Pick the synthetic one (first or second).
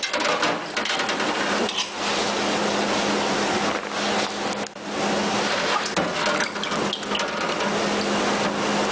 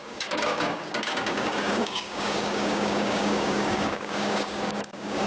second